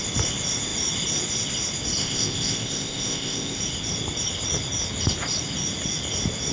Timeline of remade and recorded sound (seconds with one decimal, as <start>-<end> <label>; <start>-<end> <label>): 0.0-2.0 recorded; 2.0-3.6 remade; 3.6-6.5 recorded